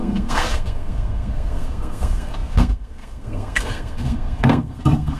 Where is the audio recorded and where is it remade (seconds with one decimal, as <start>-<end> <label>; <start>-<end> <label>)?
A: 0.0-5.2 remade